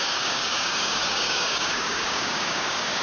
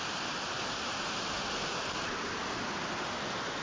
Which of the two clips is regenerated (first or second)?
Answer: first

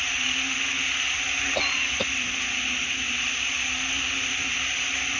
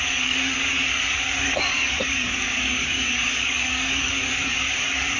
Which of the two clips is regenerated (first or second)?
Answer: second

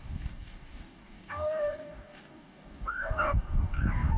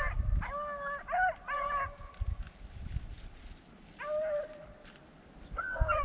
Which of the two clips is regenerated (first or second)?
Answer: first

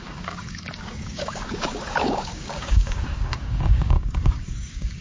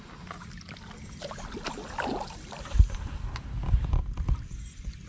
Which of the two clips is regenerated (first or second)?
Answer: first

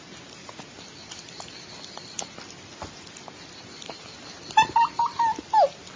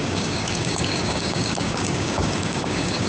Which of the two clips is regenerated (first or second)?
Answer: second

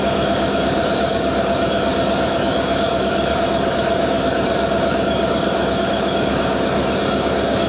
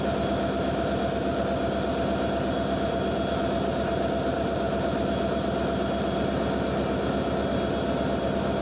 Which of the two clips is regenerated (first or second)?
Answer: first